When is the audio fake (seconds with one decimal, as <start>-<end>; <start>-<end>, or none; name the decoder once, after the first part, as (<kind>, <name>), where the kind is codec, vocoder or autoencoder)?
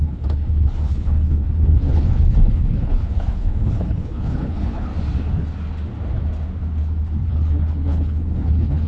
0.0-4.9 (codec, HILCodec); 7.3-8.9